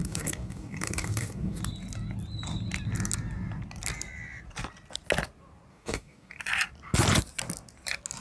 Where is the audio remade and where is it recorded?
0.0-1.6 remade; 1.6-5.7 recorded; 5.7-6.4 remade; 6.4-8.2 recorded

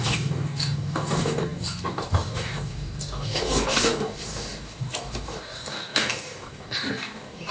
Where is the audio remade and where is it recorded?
0.0-7.5 remade

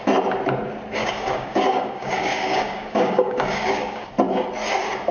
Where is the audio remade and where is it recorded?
0.0-1.0 recorded; 1.0-4.1 remade; 4.1-5.1 recorded

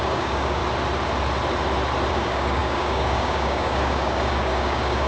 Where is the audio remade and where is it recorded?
0.0-0.6 remade; 0.6-2.1 recorded; 2.1-5.1 remade

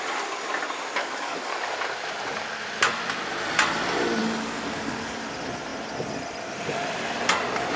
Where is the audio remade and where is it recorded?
0.0-1.0 recorded; 1.0-1.6 remade; 1.6-4.2 recorded; 4.2-5.2 remade; 5.2-7.8 recorded